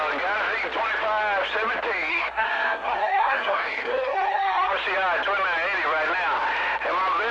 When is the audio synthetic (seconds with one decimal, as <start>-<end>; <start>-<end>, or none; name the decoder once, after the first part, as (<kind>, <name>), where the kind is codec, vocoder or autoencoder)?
2.1-4.7 (codec, SNAC)